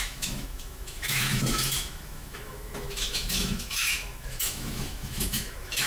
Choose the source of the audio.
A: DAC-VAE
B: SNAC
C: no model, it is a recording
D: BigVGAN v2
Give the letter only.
A